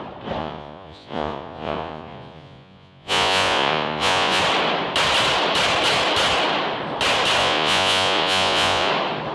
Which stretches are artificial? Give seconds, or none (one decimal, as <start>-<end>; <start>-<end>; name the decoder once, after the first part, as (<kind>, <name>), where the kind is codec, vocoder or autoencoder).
0.4-4.4 (vocoder, Vocos); 7.4-8.9